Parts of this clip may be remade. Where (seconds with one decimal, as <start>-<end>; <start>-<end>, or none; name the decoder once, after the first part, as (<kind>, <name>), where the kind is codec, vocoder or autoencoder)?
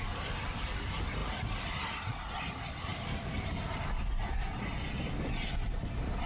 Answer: 2.9-4.0 (vocoder, BigVGAN v2)